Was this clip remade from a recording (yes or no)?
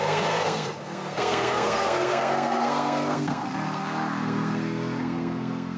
yes